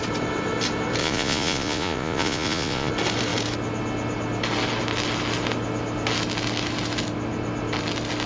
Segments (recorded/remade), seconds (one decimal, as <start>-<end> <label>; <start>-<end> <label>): 0.0-1.0 recorded; 1.0-2.9 remade; 2.9-8.3 recorded